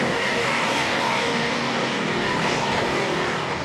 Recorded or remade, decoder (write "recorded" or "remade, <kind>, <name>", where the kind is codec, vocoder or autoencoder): remade, codec, DAC